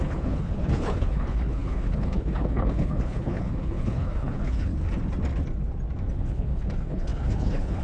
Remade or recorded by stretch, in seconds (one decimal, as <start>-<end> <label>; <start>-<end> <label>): 0.0-4.7 remade; 4.7-6.1 recorded; 6.1-7.8 remade